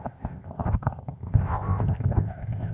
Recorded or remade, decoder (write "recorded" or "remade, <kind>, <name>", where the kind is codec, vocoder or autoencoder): remade, codec, ZipCodec